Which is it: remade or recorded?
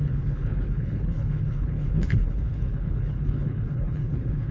remade